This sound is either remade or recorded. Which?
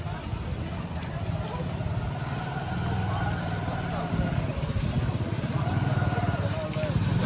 recorded